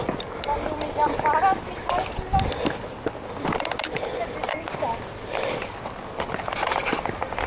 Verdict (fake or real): real